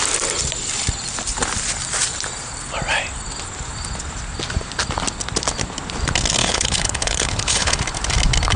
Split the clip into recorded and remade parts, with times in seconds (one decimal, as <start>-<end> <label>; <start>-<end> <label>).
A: 0.0-6.4 recorded; 6.4-7.8 remade; 7.8-8.6 recorded